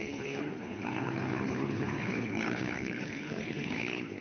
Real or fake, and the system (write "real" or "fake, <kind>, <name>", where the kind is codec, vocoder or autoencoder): fake, codec, HILCodec